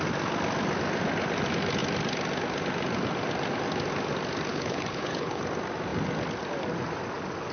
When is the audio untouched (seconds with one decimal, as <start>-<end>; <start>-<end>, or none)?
0.0-4.5; 5.4-7.5